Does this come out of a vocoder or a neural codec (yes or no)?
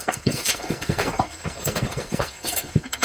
yes